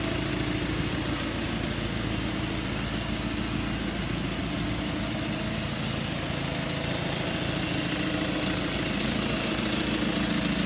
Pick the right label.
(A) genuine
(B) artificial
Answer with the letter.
A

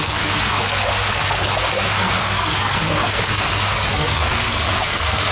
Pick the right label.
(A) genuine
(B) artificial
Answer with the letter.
B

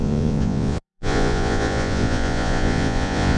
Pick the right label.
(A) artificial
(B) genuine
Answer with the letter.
A